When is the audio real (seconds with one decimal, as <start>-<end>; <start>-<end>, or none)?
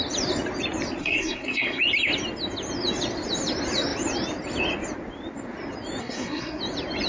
0.0-1.0; 1.8-6.0; 6.6-7.1